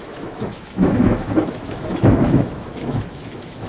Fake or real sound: fake